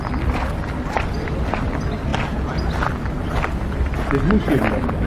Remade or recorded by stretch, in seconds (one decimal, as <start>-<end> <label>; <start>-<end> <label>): 0.0-5.1 recorded